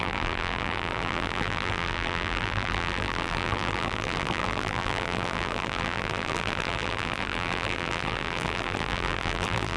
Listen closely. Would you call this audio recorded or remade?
remade